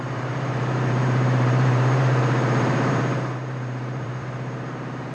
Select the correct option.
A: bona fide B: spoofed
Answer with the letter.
B